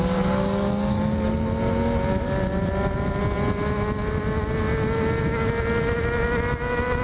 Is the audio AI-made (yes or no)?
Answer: no